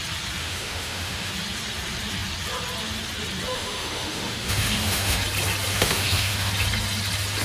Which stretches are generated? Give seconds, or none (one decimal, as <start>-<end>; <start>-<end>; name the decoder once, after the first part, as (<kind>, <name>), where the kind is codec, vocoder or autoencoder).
0.4-1.3 (autoencoder, DAC-VAE); 3.5-5.2; 5.7-6.5